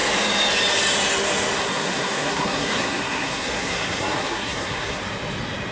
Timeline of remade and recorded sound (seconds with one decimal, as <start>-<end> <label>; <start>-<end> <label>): 0.0-1.6 recorded; 1.6-5.0 remade; 5.0-5.7 recorded